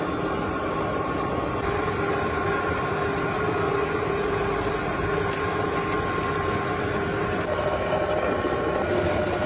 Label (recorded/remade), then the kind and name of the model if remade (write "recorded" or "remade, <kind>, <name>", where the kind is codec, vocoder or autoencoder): recorded